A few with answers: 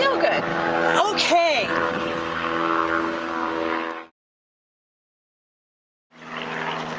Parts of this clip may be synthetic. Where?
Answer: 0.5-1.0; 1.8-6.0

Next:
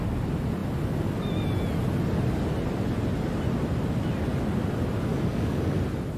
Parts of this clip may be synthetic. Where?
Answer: 5.1-5.8

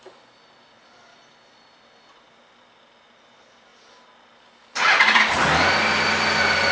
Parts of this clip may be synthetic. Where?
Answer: none